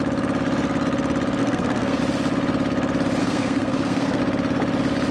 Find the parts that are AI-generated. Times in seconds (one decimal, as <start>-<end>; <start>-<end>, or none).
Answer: 1.4-2.0; 3.2-4.2